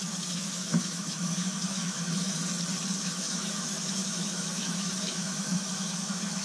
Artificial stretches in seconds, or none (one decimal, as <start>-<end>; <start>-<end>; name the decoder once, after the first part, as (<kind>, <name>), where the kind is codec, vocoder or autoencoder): 0.0-2.4 (autoencoder, DAC-VAE); 3.0-6.4